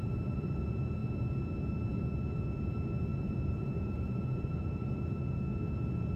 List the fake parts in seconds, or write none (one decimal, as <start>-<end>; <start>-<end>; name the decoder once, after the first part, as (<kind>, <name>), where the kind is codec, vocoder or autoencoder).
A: 0.0-0.6 (vocoder, BigVGAN v2); 3.1-5.1